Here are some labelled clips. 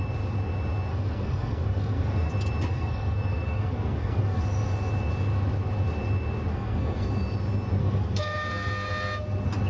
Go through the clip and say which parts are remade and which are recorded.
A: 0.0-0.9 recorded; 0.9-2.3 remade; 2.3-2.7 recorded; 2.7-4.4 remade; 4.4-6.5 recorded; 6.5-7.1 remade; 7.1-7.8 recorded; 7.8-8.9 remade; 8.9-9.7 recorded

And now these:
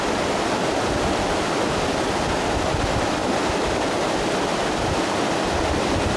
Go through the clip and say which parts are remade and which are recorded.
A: 0.0-6.2 recorded

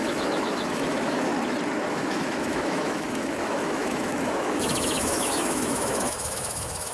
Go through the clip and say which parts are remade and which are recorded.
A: 0.0-1.3 remade; 1.3-1.9 recorded; 1.9-6.9 remade

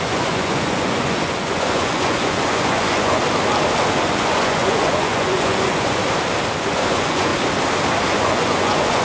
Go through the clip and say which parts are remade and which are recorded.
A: 0.0-3.2 remade; 3.2-4.0 recorded; 4.0-6.0 remade; 6.0-6.6 recorded; 6.6-7.3 remade; 7.3-8.1 recorded; 8.1-9.0 remade

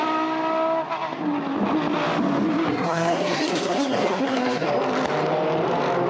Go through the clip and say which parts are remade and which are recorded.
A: 0.0-2.7 recorded; 2.7-4.7 remade; 4.7-6.1 recorded

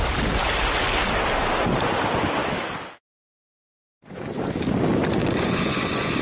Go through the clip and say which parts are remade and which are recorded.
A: 0.0-3.3 recorded; 3.3-4.5 remade; 4.5-5.2 recorded; 5.2-6.2 remade

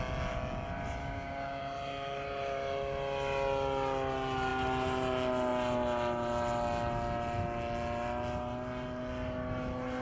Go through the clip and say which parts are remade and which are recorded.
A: 0.0-1.0 recorded; 1.0-1.6 remade; 1.6-10.0 recorded

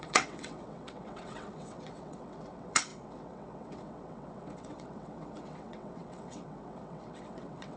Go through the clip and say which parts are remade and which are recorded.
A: 0.0-7.8 remade